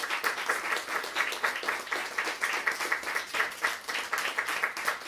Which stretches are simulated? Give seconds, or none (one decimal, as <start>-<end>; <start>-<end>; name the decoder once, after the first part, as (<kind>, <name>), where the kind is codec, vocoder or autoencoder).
none